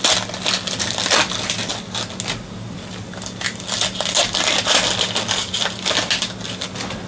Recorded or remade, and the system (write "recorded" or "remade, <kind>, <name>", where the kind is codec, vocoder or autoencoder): recorded